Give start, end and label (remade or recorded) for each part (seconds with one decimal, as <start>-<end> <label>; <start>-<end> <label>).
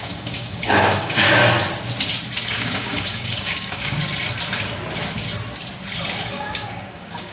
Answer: 0.0-1.4 remade; 1.4-2.5 recorded; 2.5-4.0 remade; 4.0-6.3 recorded; 6.3-7.3 remade